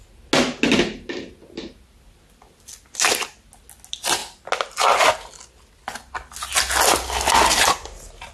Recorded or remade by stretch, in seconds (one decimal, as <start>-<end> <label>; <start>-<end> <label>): 0.0-8.3 recorded